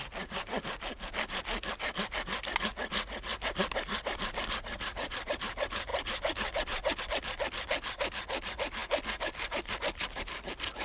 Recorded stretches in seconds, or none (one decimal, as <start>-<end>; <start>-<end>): 0.0-10.8